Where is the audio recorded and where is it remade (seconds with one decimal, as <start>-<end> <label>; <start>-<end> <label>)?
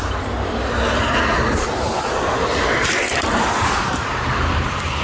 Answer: 0.0-1.3 remade; 1.3-3.7 recorded; 3.7-5.0 remade